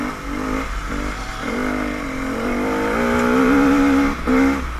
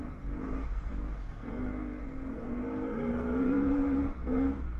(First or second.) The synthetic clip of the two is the second